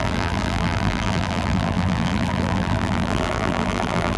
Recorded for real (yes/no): no